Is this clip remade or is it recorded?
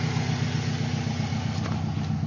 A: recorded